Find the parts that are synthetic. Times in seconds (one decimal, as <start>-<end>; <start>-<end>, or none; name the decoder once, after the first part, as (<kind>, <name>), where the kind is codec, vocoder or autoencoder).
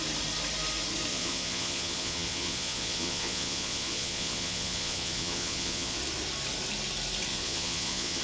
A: 1.1-6.0 (vocoder, Vocos); 7.3-8.2